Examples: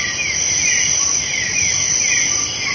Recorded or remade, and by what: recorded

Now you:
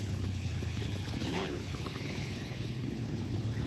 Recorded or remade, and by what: remade, codec, HILCodec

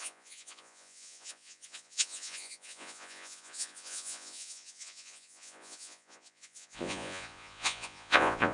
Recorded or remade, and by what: remade, vocoder, Vocos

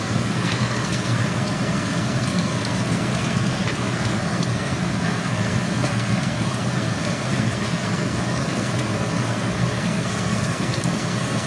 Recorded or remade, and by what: remade, codec, SNAC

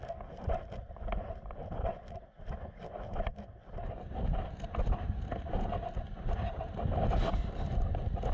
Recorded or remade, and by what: recorded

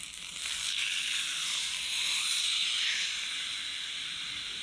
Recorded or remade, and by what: recorded